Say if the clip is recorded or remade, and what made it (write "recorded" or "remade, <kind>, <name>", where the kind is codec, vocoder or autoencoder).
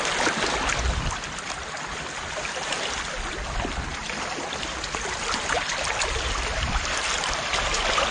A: recorded